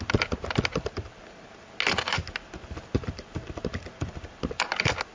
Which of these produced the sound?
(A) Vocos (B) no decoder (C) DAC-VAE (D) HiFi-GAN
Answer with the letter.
B